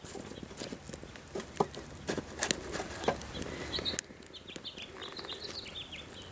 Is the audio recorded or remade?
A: recorded